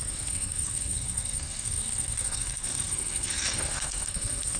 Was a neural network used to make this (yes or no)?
yes